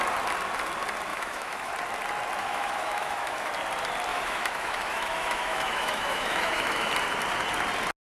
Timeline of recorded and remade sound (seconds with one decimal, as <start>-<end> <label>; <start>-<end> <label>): 0.0-1.1 recorded; 1.1-1.7 remade; 1.7-2.4 recorded; 2.4-3.5 remade; 3.5-4.1 recorded; 4.1-6.9 remade; 6.9-8.1 recorded